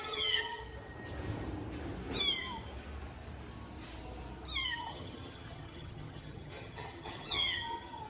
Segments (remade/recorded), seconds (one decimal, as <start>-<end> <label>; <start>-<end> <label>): 0.0-0.6 remade; 0.6-4.8 recorded; 4.8-8.1 remade